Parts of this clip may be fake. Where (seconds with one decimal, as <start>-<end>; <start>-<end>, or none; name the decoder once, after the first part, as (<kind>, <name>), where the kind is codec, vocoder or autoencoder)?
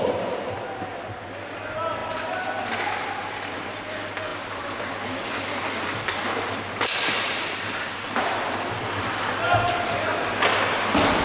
2.0-3.7 (vocoder, BigVGAN v2); 4.3-9.3